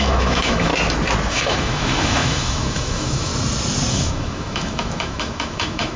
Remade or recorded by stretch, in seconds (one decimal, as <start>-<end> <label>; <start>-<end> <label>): 0.0-0.7 remade; 0.7-1.3 recorded; 1.3-3.3 remade; 3.3-3.9 recorded; 3.9-6.0 remade